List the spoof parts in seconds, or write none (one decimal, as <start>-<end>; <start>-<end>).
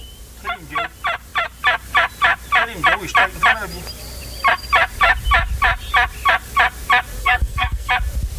7.2-7.9